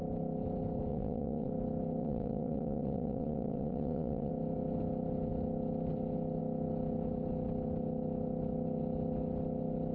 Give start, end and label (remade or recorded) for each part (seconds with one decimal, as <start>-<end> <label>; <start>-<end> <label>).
0.0-0.9 recorded; 0.9-1.5 remade; 1.5-2.0 recorded; 2.0-4.3 remade; 4.3-9.9 recorded